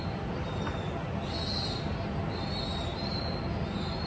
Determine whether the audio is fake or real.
real